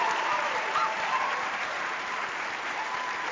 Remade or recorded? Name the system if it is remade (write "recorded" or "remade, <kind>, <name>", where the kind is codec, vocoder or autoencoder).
remade, vocoder, BigVGAN v2